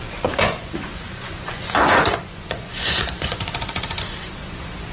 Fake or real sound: fake